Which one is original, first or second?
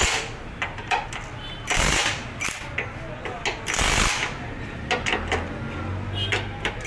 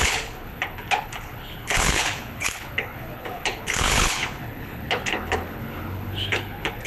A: first